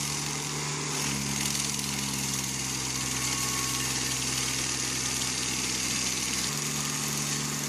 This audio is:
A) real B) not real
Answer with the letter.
A